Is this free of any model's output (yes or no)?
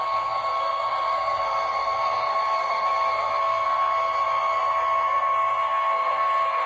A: no